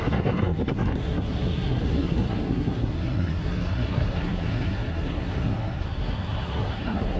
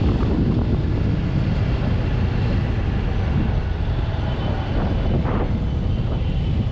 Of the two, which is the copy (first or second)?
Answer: first